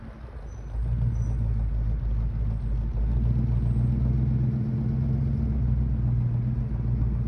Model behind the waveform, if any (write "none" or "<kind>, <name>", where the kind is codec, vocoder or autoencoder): none